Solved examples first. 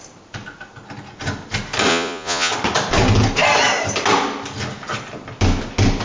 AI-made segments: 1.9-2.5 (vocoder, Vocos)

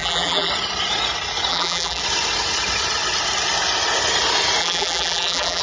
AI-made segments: 0.0-0.5 (vocoder, BigVGAN v2); 1.5-2.0; 4.6-5.6

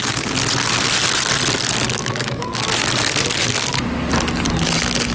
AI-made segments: 2.0-2.7 (autoencoder, DAC-VAE)